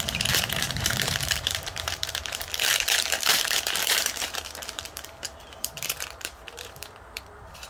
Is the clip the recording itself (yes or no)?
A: no